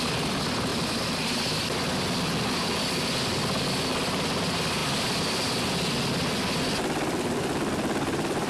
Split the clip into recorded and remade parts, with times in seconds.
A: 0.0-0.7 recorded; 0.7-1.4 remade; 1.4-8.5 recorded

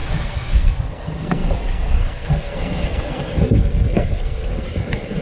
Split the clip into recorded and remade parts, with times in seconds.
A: 0.0-5.2 remade

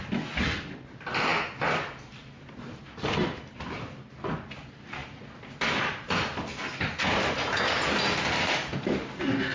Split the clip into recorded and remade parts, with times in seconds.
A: 0.0-9.5 recorded

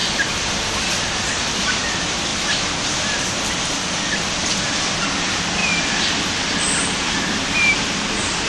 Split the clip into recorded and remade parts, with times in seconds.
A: 0.0-8.5 recorded

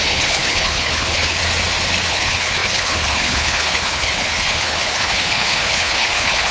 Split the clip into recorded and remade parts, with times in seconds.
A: 0.0-1.4 remade; 1.4-2.1 recorded; 2.1-6.5 remade

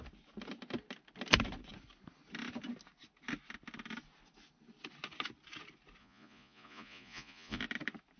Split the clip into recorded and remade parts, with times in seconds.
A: 0.0-6.0 recorded; 6.0-7.6 remade; 7.6-8.2 recorded